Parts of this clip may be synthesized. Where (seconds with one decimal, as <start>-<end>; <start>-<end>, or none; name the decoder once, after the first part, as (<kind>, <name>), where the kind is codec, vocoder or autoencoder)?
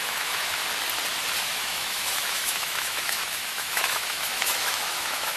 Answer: 0.0-0.6 (autoencoder, DAC-VAE); 1.4-5.4